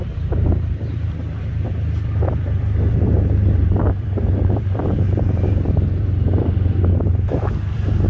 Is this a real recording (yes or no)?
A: no